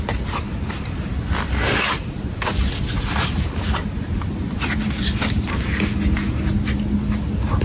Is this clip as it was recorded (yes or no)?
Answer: yes